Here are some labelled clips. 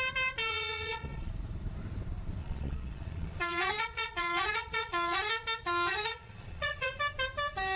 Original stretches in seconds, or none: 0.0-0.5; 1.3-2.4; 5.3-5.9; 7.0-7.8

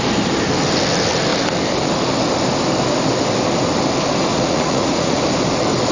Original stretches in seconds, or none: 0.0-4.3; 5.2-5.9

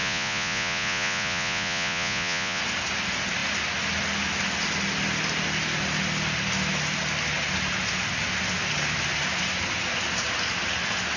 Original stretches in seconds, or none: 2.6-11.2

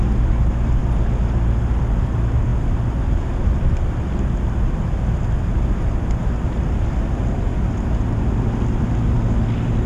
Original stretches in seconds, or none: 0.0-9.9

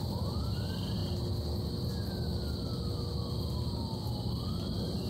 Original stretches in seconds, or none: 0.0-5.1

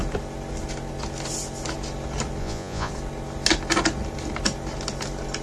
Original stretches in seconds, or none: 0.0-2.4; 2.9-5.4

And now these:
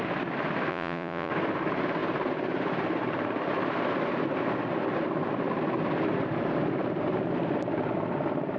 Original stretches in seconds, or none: 0.0-0.7; 1.3-8.6

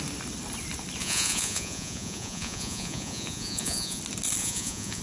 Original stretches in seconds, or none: 0.0-1.0; 4.0-4.4